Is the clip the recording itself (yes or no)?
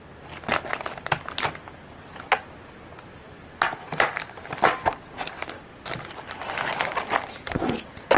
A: yes